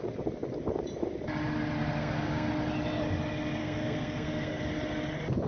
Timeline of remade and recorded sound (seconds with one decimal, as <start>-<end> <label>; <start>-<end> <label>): 0.0-2.0 recorded; 2.0-2.5 remade; 2.5-3.6 recorded; 3.6-4.6 remade; 4.6-5.5 recorded